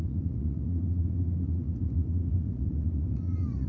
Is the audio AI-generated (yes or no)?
yes